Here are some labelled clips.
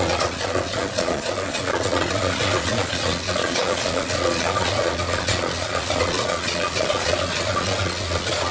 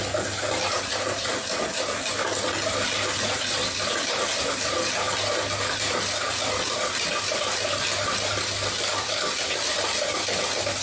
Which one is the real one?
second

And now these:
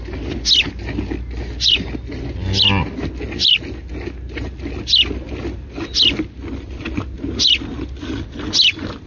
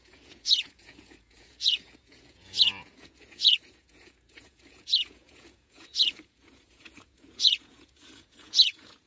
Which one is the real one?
first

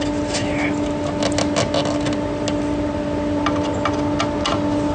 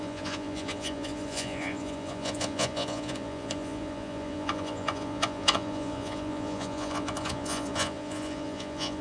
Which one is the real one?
first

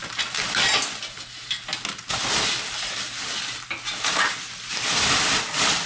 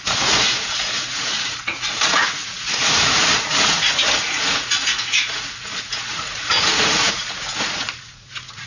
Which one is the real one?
first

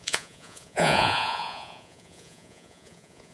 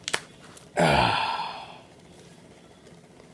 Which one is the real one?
second